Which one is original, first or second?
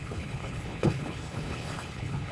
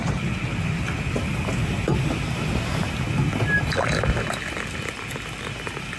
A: second